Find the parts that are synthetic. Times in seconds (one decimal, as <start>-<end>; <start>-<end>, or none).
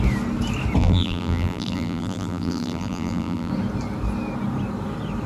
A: 0.8-3.5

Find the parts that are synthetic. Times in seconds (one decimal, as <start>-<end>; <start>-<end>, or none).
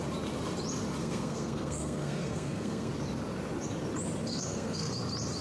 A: 1.0-2.9; 4.3-4.9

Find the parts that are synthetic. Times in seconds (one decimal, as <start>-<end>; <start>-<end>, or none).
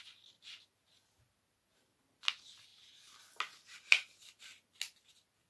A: none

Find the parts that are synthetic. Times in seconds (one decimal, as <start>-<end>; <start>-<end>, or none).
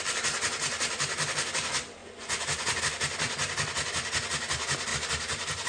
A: 2.0-2.8